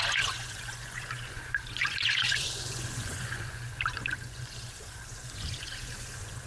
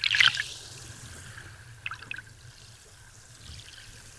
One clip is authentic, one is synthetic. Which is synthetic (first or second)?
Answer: first